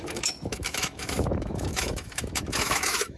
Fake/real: fake